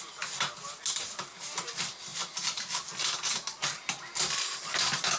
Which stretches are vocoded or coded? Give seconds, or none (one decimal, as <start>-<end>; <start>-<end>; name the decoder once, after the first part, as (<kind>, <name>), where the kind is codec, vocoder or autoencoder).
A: none